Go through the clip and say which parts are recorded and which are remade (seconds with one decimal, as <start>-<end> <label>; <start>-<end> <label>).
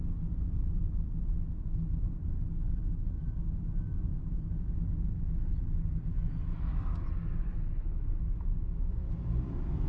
0.0-2.2 recorded; 2.2-2.8 remade; 2.8-5.1 recorded; 5.1-5.6 remade; 5.6-7.4 recorded; 7.4-8.0 remade; 8.0-9.9 recorded